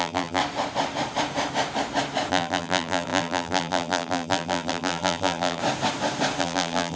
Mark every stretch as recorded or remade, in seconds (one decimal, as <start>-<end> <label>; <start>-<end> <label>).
0.0-0.4 remade; 0.4-2.3 recorded; 2.3-5.6 remade; 5.6-6.4 recorded; 6.4-7.0 remade